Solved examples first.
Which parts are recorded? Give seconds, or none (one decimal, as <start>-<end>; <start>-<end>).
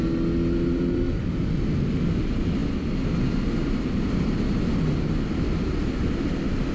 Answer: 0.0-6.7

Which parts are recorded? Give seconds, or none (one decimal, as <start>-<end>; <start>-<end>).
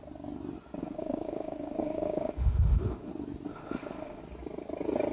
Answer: 0.0-0.8; 3.1-3.5; 4.2-5.1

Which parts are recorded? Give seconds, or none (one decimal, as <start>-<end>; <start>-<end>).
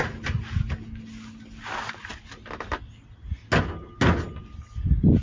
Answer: 0.0-5.2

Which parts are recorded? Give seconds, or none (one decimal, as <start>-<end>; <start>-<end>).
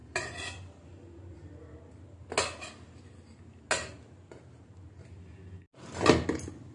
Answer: 0.0-6.7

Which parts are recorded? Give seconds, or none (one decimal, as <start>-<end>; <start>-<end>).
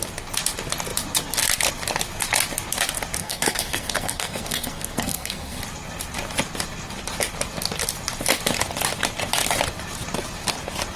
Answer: 0.0-3.2; 5.6-11.0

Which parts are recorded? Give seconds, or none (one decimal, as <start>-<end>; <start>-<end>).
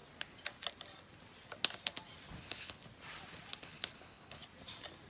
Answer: 0.0-2.4; 2.8-3.6; 4.4-5.1